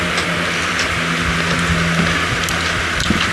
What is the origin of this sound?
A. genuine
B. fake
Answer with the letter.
A